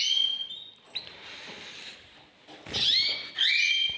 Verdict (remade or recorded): recorded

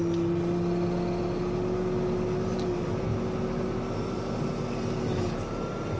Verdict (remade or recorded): recorded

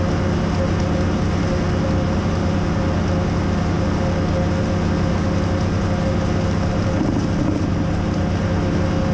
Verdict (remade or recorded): recorded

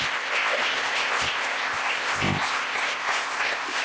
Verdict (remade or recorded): remade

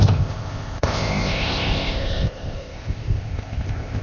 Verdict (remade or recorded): remade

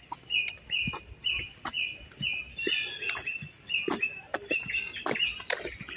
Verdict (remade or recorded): recorded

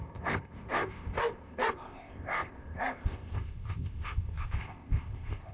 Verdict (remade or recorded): remade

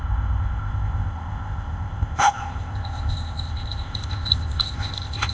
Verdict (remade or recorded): remade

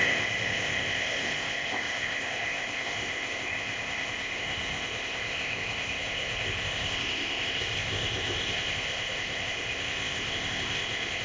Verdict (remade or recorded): remade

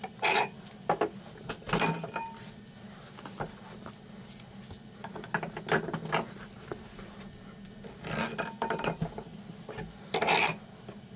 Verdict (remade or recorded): recorded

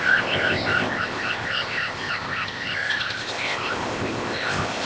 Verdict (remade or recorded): remade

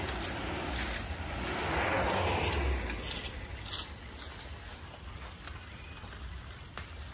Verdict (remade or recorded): recorded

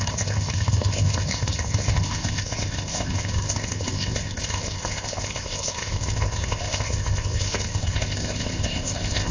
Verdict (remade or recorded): remade